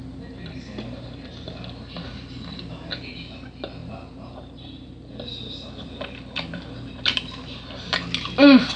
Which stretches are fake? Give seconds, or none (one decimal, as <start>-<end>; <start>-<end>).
none